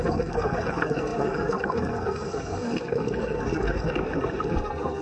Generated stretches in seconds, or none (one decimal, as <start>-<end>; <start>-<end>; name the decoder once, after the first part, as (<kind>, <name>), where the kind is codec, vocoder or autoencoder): 0.0-5.0 (codec, SNAC)